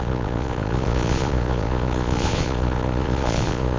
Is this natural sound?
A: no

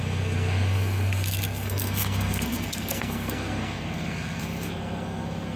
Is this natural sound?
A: no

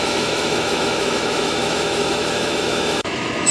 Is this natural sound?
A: no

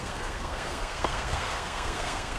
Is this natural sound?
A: no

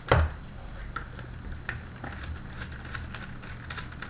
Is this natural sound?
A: yes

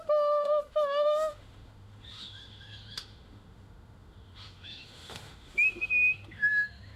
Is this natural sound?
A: no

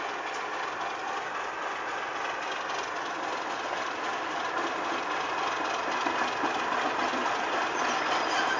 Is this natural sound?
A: yes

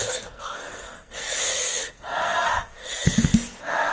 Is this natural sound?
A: no